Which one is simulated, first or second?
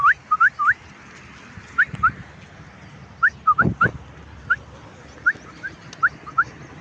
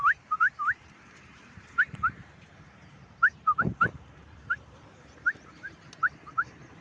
second